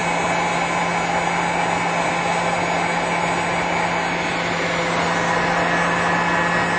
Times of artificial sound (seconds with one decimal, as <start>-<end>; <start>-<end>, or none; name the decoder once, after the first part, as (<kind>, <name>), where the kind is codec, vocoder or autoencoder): none